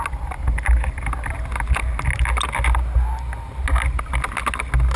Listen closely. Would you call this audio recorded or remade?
recorded